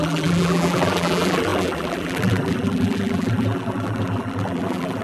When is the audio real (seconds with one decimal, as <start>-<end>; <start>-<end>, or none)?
none